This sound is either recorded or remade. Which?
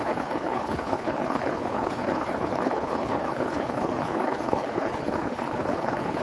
remade